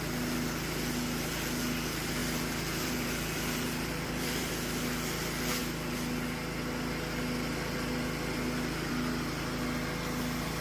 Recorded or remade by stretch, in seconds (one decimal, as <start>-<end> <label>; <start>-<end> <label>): 0.0-2.2 recorded; 2.2-4.5 remade; 4.5-10.6 recorded